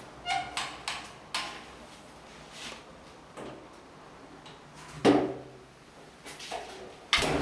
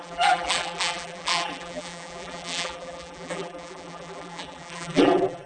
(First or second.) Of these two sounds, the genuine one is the first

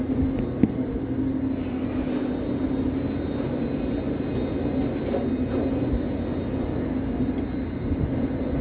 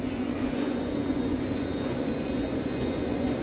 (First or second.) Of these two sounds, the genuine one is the first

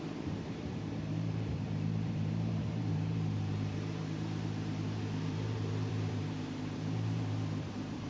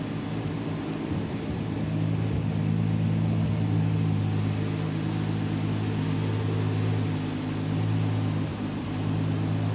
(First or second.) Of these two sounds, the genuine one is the second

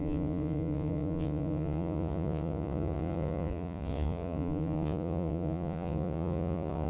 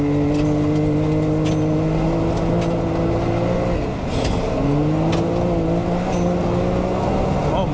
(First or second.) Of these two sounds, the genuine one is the second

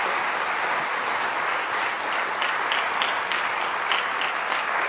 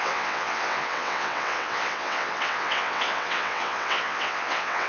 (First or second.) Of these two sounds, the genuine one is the first